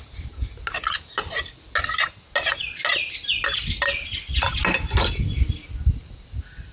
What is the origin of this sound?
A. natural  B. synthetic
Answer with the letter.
A